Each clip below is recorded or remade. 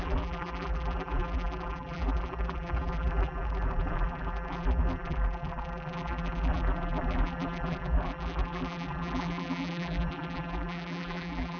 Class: remade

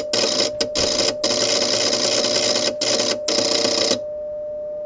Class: recorded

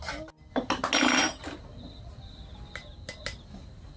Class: recorded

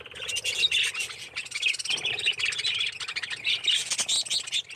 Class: recorded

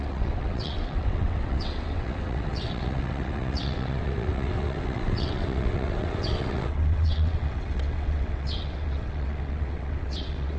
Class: remade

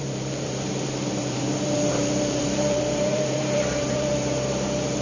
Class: remade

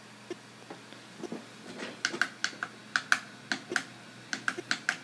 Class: recorded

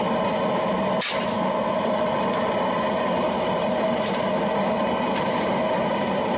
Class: recorded